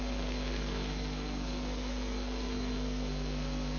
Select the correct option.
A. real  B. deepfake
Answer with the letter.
B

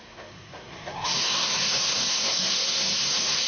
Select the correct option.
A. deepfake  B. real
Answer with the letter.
A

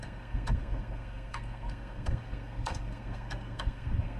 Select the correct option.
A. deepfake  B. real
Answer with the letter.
A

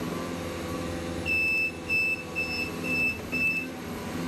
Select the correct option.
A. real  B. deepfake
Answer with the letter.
A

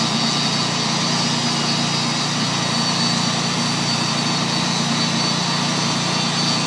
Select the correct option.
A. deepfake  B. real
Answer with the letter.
B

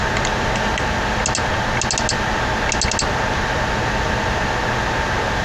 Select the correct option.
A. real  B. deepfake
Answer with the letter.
A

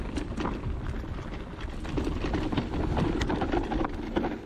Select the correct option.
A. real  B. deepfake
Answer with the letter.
A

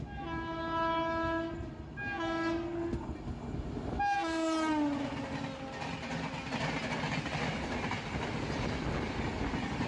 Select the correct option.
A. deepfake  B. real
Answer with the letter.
B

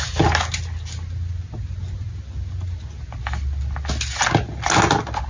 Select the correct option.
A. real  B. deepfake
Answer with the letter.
A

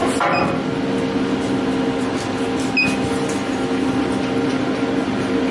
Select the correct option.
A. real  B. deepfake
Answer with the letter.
A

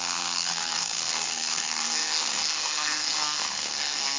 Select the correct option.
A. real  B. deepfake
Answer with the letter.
B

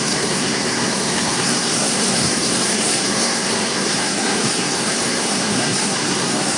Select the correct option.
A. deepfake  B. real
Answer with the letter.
A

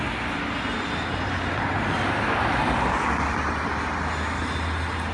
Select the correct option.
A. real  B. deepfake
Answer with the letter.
A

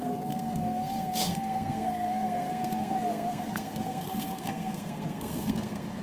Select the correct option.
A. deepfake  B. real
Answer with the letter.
A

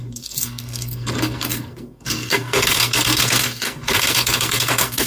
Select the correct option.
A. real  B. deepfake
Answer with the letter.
B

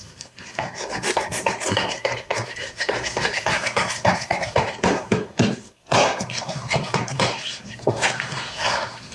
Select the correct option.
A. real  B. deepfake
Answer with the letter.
B